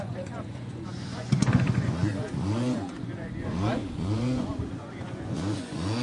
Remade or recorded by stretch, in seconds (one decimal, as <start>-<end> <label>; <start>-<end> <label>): 0.0-6.0 remade